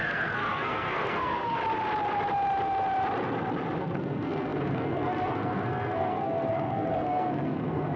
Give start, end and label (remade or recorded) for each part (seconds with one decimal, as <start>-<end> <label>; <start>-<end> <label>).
0.0-1.6 remade; 1.6-3.8 recorded; 3.8-8.0 remade